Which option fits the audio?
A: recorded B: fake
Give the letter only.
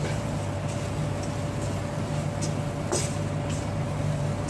A